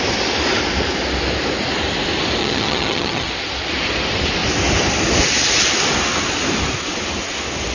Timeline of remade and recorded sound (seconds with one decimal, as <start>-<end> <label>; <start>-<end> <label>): 0.0-2.4 recorded; 2.4-3.3 remade; 3.3-7.7 recorded